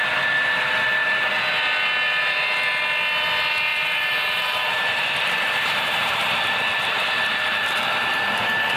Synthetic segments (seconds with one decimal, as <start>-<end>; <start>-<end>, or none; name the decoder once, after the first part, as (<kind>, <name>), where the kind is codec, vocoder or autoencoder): 3.7-6.2 (vocoder, BigVGAN v2); 7.3-8.4